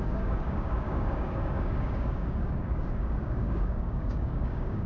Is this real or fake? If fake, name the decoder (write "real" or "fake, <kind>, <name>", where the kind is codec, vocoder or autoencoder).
fake, codec, DAC